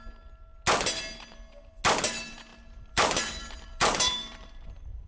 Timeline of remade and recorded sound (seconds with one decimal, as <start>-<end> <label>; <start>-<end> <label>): 0.0-2.5 recorded; 2.5-5.1 remade